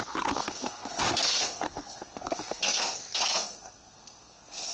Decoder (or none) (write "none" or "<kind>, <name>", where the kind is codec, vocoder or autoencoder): codec, SNAC